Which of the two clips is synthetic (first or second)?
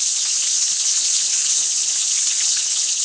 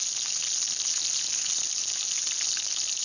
first